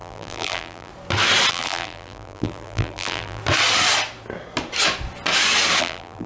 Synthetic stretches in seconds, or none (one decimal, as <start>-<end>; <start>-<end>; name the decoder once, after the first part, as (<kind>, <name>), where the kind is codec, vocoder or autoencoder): 0.0-0.9 (vocoder, BigVGAN v2); 1.5-3.4; 5.8-6.3